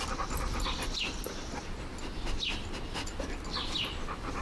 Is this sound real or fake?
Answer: real